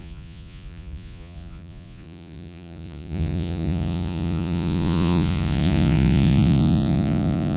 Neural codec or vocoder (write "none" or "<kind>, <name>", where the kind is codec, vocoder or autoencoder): vocoder, Vocos